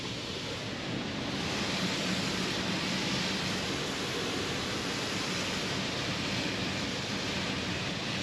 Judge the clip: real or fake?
real